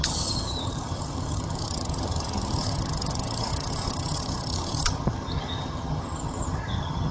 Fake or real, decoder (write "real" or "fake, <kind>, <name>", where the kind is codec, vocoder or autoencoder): fake, vocoder, HiFi-GAN